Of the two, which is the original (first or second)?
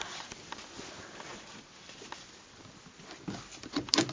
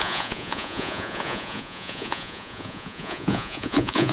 first